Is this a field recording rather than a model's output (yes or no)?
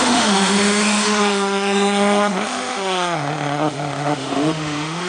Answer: no